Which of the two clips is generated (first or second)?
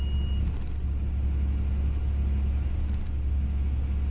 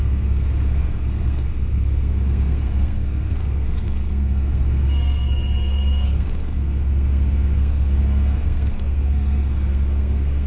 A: second